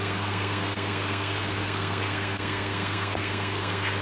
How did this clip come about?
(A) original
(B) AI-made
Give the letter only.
B